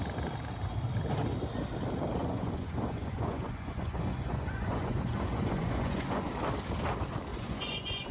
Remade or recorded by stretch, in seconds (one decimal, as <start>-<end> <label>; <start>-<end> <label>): 0.0-2.2 recorded; 2.2-6.3 remade; 6.3-7.3 recorded; 7.3-8.1 remade